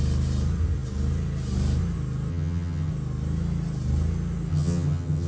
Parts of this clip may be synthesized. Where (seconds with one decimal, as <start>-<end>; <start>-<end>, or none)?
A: 2.3-2.9; 4.5-5.3